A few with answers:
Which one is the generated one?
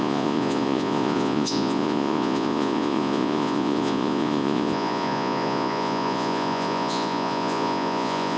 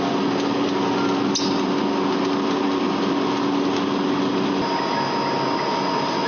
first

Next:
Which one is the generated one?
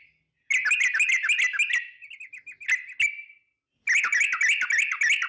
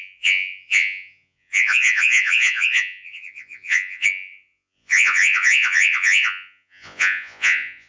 second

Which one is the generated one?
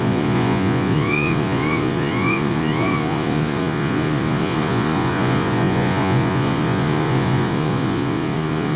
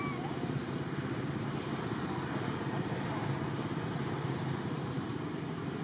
first